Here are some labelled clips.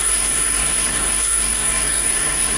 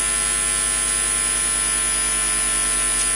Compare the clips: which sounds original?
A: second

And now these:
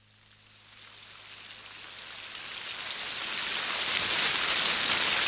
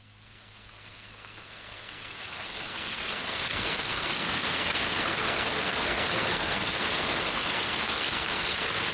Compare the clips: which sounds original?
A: first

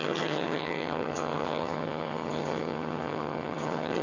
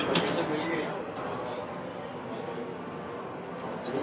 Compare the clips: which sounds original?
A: second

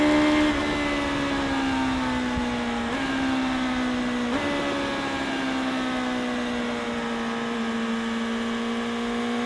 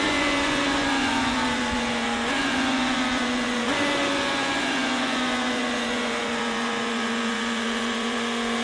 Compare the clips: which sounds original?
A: first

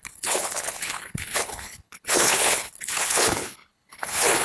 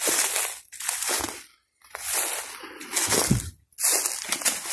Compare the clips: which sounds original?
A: second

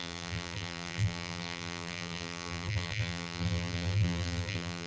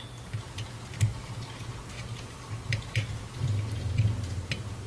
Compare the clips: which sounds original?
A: second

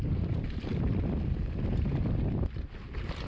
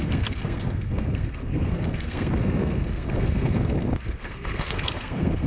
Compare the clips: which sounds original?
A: first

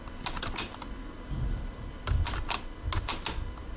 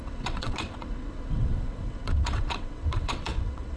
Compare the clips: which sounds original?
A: first